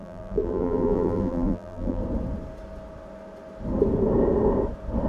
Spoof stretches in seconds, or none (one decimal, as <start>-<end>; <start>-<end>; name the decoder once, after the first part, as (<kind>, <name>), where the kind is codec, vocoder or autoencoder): 0.0-2.0 (vocoder, BigVGAN v2)